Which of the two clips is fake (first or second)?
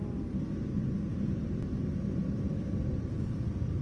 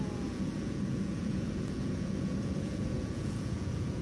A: second